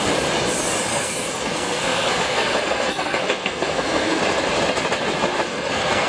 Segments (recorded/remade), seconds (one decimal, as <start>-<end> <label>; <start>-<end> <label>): 0.0-0.9 recorded; 0.9-4.2 remade; 4.2-5.5 recorded; 5.5-6.1 remade